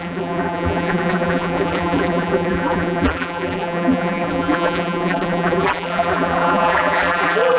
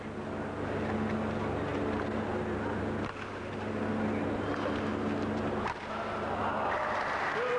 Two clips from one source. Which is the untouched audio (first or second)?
second